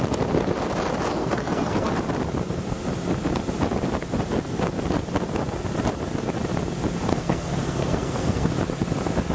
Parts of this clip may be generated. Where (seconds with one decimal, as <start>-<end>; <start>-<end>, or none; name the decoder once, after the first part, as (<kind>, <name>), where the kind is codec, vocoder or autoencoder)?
1.1-1.9 (codec, SNAC); 7.1-8.5